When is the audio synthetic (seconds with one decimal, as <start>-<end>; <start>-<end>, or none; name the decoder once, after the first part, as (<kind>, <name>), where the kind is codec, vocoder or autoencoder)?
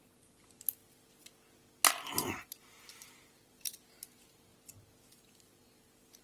0.0-0.8 (vocoder, BigVGAN v2); 1.9-4.5; 5.1-6.2